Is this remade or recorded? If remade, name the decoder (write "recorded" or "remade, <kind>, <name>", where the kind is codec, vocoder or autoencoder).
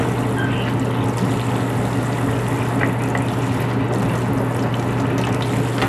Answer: recorded